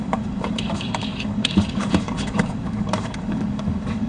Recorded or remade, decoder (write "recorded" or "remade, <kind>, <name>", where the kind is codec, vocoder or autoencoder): remade, codec, DAC